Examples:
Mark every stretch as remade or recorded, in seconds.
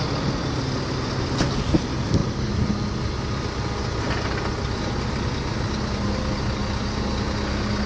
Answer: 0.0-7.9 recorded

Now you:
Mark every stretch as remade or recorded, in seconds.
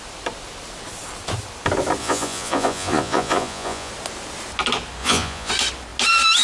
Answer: 0.0-2.0 recorded; 2.0-3.9 remade; 3.9-5.0 recorded; 5.0-5.5 remade; 5.5-6.4 recorded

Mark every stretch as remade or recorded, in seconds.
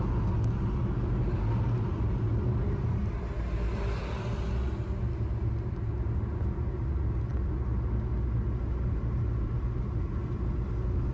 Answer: 0.0-11.1 recorded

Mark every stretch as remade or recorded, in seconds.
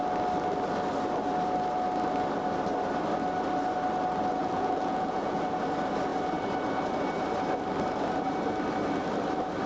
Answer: 0.0-4.4 recorded; 4.4-5.4 remade; 5.4-9.7 recorded